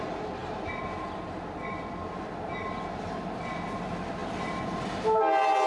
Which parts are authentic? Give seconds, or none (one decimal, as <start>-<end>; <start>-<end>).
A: 0.0-5.7